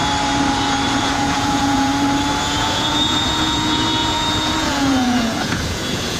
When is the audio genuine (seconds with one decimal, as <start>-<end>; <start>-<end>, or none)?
0.0-1.0; 1.9-2.4